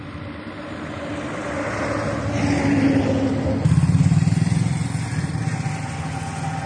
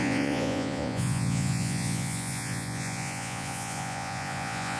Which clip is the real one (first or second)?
first